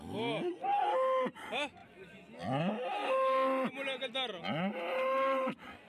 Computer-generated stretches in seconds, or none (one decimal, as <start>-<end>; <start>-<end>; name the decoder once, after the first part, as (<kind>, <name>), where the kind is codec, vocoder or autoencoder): none